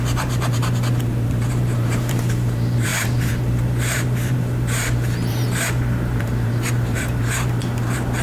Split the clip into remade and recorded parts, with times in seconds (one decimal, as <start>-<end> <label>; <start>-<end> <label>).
0.0-8.2 remade